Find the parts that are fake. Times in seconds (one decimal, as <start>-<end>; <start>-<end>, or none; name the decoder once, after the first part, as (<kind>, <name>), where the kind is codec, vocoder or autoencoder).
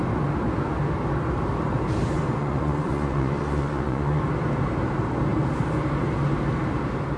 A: 2.4-4.2 (vocoder, Vocos)